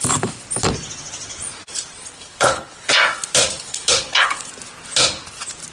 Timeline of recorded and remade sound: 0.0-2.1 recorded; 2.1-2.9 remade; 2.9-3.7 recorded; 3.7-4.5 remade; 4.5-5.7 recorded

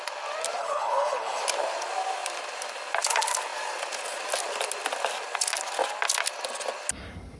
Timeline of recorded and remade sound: 0.0-0.6 recorded; 0.6-1.4 remade; 1.4-7.4 recorded

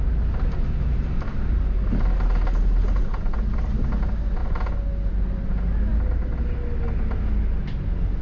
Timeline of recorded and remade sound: 0.0-8.2 recorded